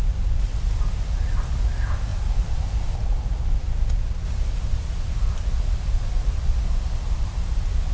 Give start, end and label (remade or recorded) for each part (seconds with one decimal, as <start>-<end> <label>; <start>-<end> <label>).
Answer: 0.0-7.9 recorded